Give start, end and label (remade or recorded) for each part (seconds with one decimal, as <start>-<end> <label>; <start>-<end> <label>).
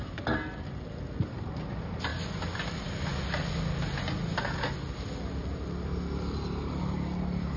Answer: 0.0-7.6 recorded